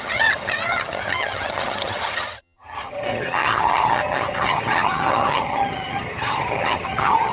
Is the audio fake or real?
fake